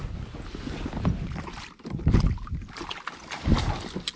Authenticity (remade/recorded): recorded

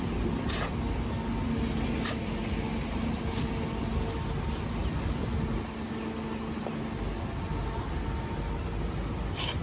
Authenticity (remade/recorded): recorded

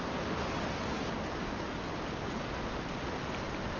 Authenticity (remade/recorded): recorded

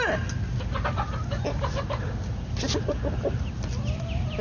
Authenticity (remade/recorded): recorded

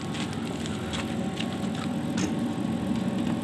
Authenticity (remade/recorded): recorded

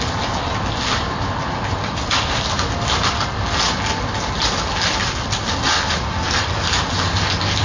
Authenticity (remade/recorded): recorded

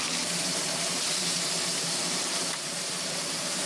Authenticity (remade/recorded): remade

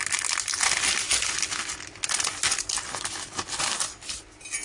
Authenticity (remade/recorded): recorded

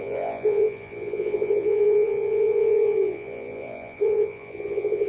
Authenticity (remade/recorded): remade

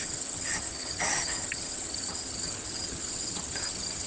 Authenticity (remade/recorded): remade